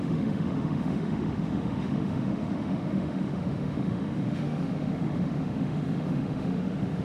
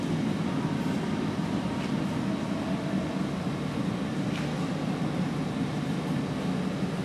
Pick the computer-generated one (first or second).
first